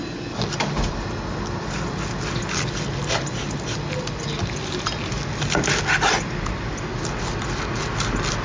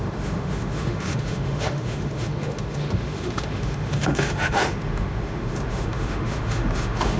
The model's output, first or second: second